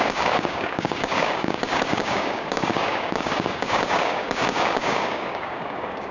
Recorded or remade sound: remade